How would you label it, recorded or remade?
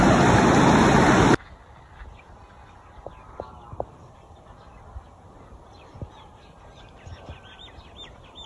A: recorded